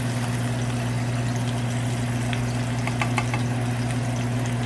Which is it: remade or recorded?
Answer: recorded